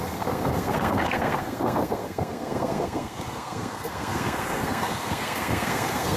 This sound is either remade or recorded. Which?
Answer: remade